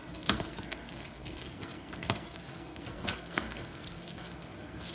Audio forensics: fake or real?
fake